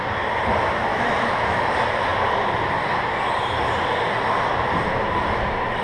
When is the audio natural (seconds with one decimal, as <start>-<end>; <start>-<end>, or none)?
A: 0.0-0.9; 1.7-5.8